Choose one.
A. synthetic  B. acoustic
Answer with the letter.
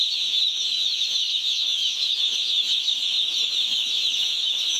A